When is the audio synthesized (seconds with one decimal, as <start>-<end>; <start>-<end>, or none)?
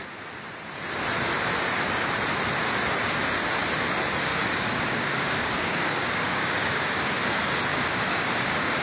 4.3-7.2; 7.7-8.8